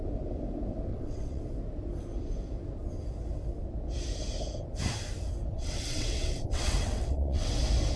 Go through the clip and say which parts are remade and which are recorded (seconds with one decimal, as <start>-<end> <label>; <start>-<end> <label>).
0.0-0.9 recorded; 0.9-1.4 remade; 1.4-5.5 recorded; 5.5-7.6 remade; 7.6-8.0 recorded